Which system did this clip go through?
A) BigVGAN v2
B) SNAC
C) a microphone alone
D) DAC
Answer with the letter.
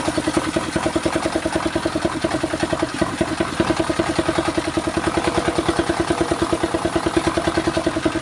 C